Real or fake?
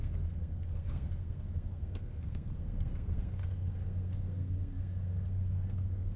fake